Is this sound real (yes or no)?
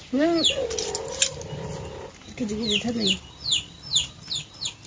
yes